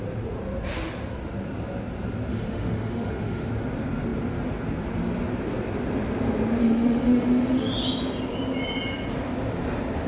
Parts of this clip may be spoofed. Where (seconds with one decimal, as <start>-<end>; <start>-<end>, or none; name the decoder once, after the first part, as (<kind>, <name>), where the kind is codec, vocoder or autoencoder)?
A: 2.3-3.5 (autoencoder, DAC-VAE); 6.6-7.7